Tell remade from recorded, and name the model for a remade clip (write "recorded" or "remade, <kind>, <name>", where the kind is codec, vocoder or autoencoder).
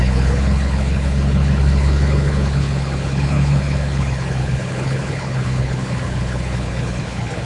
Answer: remade, codec, HILCodec